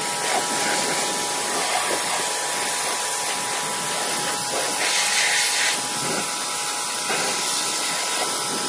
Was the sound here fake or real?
real